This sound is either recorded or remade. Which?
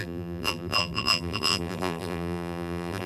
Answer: remade